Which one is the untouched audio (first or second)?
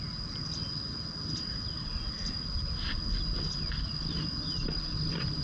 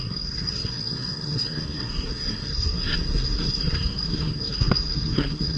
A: first